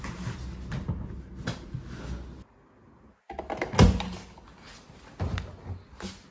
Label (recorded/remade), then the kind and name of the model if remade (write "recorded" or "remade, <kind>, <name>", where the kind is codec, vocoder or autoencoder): recorded